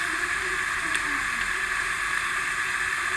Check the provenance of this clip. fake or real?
real